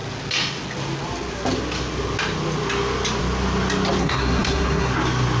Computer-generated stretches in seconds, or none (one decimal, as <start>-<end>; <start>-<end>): 4.0-4.9

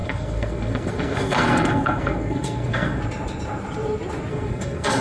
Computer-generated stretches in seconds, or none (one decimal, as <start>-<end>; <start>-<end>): 0.0-3.0; 4.3-5.0

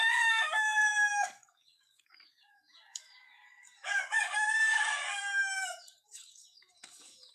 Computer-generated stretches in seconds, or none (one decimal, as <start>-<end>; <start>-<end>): 0.0-7.3

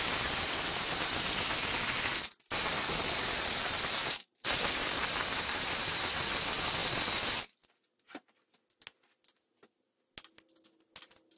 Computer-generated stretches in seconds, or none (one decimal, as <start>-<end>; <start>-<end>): 4.0-6.3

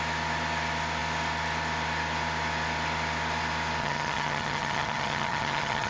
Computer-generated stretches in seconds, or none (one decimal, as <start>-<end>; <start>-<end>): 3.8-5.9